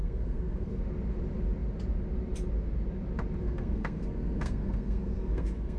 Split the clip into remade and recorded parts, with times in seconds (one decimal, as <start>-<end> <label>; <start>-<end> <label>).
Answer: 0.0-0.8 remade; 0.8-3.4 recorded; 3.4-5.8 remade

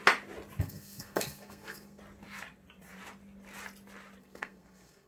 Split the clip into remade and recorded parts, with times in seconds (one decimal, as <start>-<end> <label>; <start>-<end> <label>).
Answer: 0.0-0.6 recorded; 0.6-2.0 remade; 2.0-4.2 recorded; 4.2-5.1 remade

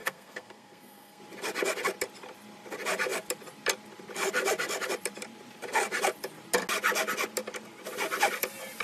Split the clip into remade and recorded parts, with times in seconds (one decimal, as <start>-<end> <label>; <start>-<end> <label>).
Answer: 0.0-1.2 remade; 1.2-8.8 recorded

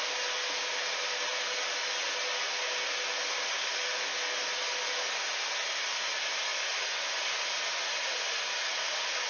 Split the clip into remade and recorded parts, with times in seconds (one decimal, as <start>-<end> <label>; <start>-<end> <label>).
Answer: 0.0-9.3 recorded

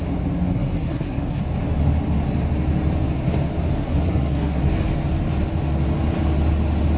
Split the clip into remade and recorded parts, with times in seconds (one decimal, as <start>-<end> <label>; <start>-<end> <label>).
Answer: 0.0-0.5 recorded; 0.5-1.4 remade; 1.4-3.8 recorded; 3.8-4.6 remade; 4.6-7.0 recorded

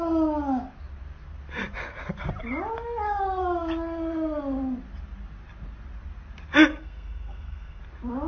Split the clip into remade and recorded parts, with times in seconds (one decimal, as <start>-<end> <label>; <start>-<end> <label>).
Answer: 0.0-6.7 recorded; 6.7-7.8 remade; 7.8-8.3 recorded